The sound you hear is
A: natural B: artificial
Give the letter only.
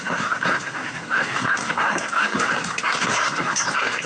B